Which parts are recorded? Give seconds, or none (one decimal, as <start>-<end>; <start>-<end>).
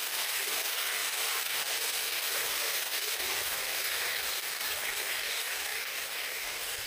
none